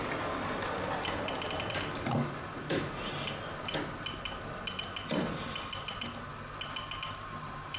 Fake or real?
real